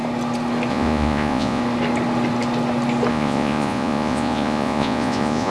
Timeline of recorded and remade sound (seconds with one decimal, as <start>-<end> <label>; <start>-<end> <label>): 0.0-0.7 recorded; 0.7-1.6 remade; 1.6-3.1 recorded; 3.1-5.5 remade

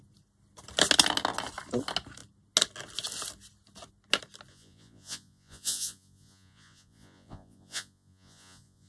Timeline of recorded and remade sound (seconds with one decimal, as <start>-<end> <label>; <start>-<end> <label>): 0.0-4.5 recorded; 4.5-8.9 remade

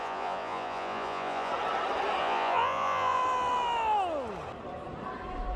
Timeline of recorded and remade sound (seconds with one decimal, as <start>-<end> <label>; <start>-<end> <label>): 0.0-1.5 remade; 1.5-2.2 recorded; 2.2-3.2 remade; 3.2-5.6 recorded

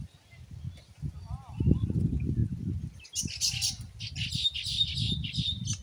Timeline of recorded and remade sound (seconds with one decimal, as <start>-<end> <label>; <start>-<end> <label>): 0.0-5.8 recorded

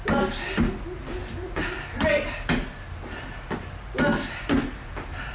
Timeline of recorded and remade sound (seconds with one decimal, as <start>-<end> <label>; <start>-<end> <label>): 0.0-5.3 recorded

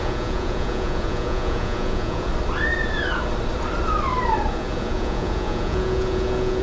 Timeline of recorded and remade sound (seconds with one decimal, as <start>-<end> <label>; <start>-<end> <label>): 0.0-2.3 remade; 2.3-4.5 recorded; 4.5-6.6 remade

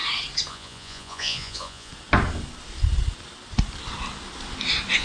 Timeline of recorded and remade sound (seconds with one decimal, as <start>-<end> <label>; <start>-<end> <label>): 0.0-0.5 recorded; 0.5-1.9 remade; 1.9-5.0 recorded

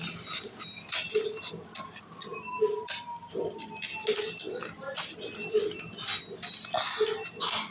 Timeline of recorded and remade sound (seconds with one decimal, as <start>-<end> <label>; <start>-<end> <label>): 0.0-7.7 recorded